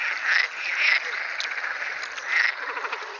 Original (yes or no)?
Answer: yes